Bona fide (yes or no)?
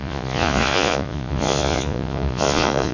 no